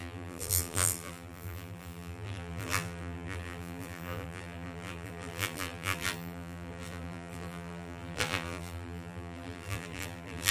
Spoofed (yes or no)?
yes